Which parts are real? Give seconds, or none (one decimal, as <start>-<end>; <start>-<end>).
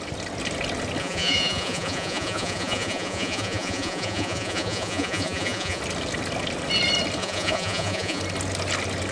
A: 0.0-1.0; 5.8-7.2; 8.2-9.1